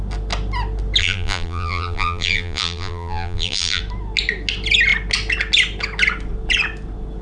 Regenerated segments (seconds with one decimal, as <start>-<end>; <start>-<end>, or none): 1.0-3.8